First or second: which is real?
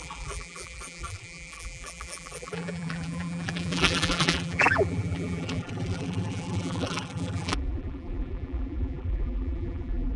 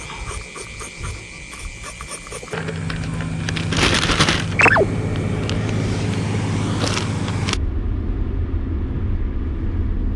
second